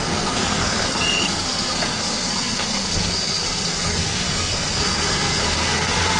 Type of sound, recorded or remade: remade